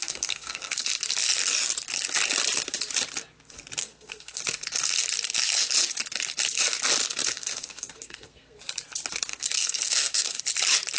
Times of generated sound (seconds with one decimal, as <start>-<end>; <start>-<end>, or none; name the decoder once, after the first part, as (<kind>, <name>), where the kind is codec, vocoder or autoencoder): 0.0-0.9 (codec, SNAC); 3.8-4.4; 7.3-8.6; 9.3-10.4